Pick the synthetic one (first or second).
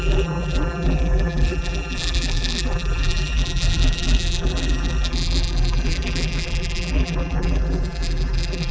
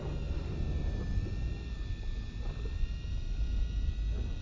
first